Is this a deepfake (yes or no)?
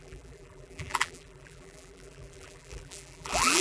yes